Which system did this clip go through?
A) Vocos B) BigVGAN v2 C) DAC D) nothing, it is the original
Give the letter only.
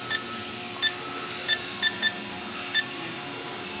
D